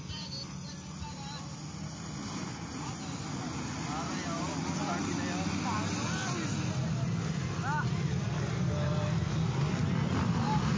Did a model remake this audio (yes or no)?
no